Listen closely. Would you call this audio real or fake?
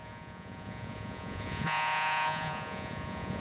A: fake